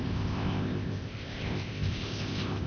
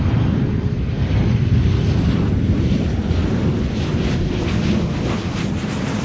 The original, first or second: second